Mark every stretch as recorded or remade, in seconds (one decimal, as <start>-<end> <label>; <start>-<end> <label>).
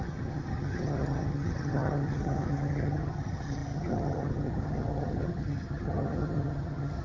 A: 0.0-7.0 remade